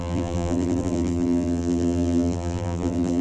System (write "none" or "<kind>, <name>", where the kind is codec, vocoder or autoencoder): vocoder, BigVGAN v2